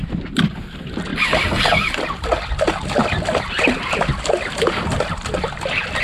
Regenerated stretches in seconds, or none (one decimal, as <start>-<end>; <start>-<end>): none